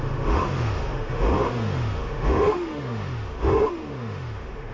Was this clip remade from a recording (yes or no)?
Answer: yes